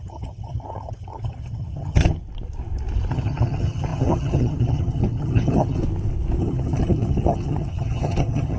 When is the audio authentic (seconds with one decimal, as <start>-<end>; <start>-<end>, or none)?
2.2-3.1; 5.8-6.4